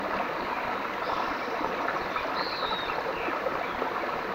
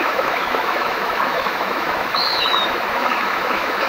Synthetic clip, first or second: second